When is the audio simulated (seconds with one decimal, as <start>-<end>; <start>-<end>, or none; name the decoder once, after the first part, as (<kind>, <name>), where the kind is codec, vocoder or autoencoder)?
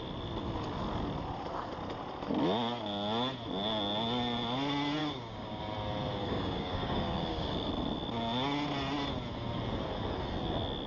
5.0-5.6 (codec, DAC); 6.2-7.7